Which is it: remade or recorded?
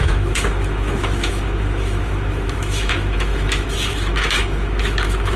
remade